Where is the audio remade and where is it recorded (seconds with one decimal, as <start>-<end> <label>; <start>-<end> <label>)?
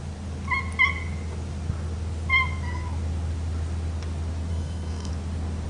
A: 0.0-4.5 recorded; 4.5-5.1 remade; 5.1-5.7 recorded